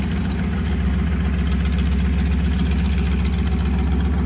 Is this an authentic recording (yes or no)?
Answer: yes